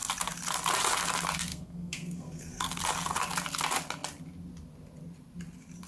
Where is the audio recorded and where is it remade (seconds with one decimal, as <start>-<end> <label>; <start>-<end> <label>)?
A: 0.0-1.5 recorded; 1.5-2.8 remade; 2.8-5.9 recorded